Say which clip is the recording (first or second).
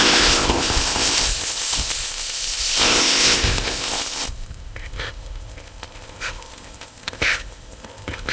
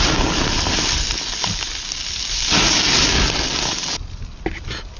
second